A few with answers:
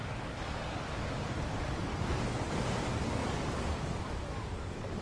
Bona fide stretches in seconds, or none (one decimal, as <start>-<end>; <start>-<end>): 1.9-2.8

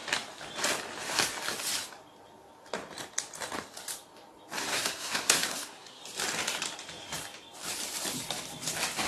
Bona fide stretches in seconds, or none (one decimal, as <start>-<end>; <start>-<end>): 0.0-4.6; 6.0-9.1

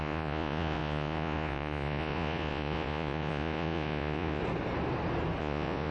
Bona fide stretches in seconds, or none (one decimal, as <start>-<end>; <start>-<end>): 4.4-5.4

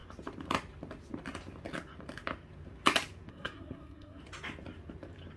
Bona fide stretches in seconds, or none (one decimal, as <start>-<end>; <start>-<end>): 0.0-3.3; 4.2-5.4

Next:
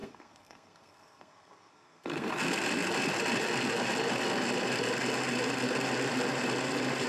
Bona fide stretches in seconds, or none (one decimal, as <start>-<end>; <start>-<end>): 2.3-7.1

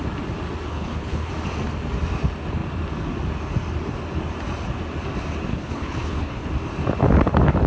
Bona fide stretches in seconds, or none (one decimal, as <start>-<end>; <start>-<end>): 0.0-0.7; 1.3-5.5; 6.5-7.7

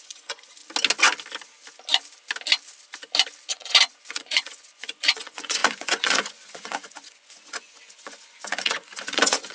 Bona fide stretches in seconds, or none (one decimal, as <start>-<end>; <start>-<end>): 0.6-3.5